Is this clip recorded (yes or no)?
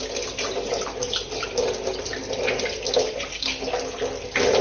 yes